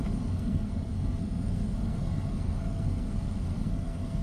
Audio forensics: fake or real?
fake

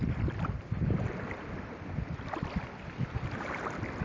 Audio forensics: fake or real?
real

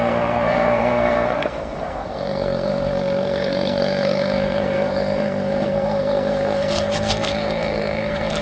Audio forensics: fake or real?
fake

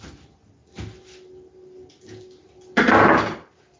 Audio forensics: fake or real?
real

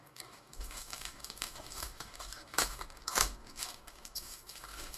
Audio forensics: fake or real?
fake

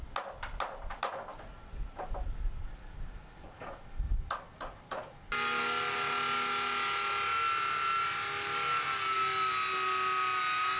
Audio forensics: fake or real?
real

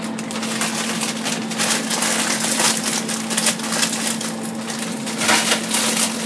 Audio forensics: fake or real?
real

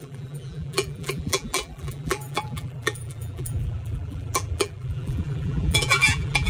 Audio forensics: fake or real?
fake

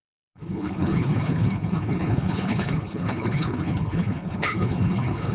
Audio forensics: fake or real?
fake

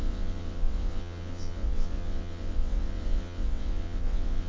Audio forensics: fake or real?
fake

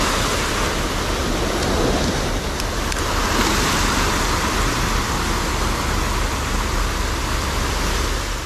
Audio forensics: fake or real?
real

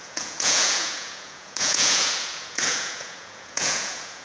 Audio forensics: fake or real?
fake